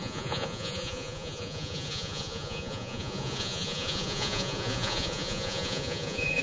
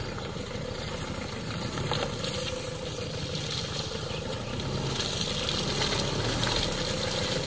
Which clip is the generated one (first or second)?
first